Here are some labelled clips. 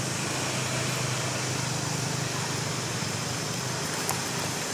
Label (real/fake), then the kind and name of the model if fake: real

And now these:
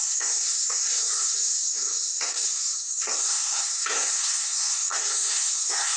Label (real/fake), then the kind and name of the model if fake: fake, codec, SNAC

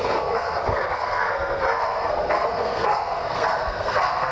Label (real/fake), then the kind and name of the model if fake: fake, codec, SNAC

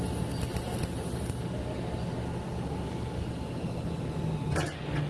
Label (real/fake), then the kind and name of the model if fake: real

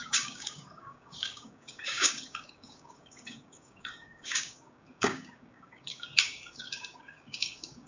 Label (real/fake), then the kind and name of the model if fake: fake, codec, DAC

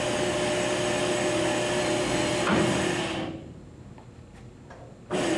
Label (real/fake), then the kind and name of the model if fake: real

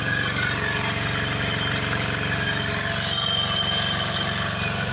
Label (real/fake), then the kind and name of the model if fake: real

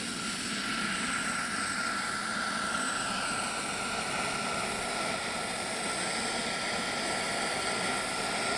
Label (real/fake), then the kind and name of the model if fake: real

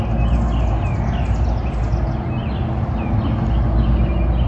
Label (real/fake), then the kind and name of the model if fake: real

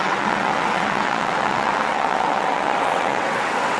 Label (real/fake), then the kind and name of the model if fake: fake, vocoder, WaveNeXt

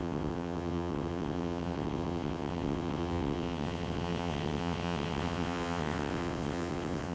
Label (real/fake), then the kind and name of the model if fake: fake, vocoder, WaveNeXt